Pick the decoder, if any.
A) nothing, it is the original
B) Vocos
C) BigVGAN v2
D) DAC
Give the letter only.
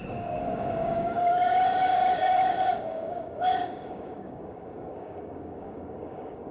D